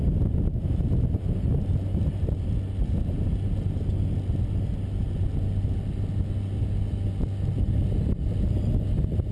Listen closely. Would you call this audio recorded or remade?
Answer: recorded